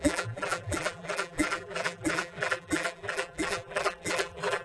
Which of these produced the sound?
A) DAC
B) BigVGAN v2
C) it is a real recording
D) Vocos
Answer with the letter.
B